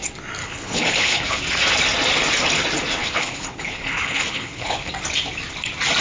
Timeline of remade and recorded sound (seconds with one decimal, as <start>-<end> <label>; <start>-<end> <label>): 0.0-0.4 recorded; 0.4-1.4 remade; 1.4-3.0 recorded; 3.0-4.9 remade; 4.9-6.0 recorded